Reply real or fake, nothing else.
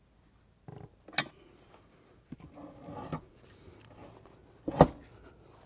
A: real